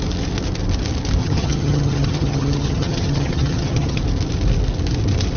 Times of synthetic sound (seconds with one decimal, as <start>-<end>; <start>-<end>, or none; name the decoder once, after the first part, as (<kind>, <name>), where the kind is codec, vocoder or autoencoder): 1.2-4.0 (vocoder, HiFi-GAN)